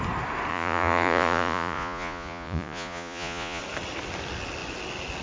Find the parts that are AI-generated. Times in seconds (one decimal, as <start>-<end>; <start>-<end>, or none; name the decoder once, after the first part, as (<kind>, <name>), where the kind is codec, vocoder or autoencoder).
0.5-3.6 (vocoder, Vocos)